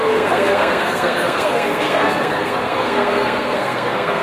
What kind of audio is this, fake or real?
fake